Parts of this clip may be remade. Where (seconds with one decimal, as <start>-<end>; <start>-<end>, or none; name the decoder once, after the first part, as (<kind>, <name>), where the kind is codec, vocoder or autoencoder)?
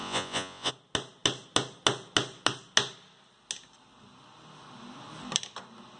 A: 0.0-0.7 (vocoder, Vocos)